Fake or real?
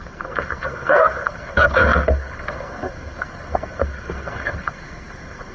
fake